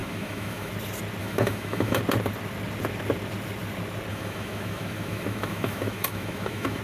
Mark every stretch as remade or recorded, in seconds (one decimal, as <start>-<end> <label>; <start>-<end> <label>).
0.0-0.7 remade; 0.7-1.2 recorded; 1.2-2.0 remade; 2.0-4.1 recorded; 4.1-6.8 remade